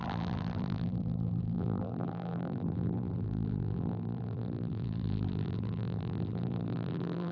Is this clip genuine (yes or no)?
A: no